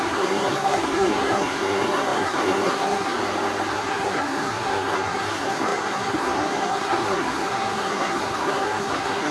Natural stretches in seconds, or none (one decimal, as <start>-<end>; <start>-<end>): 3.2-3.7